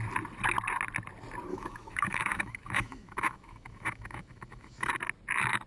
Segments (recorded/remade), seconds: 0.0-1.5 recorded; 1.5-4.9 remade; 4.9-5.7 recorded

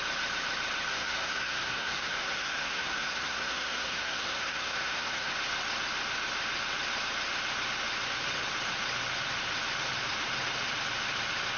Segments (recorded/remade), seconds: 0.0-0.9 recorded; 0.9-5.3 remade; 5.3-11.6 recorded

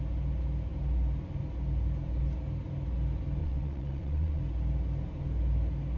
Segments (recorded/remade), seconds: 0.0-3.4 recorded; 3.4-4.4 remade; 4.4-6.0 recorded

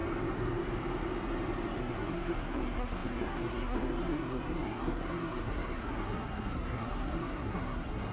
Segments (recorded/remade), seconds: 0.0-1.8 recorded; 1.8-8.1 remade